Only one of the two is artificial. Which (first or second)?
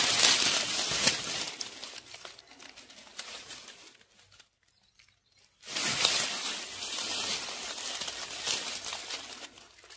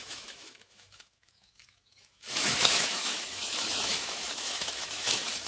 second